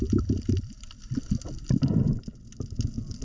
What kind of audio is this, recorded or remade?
recorded